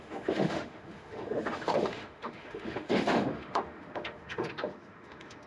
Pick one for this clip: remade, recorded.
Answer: remade